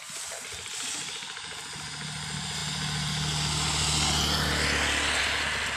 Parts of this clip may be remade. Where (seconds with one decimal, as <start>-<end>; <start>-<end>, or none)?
none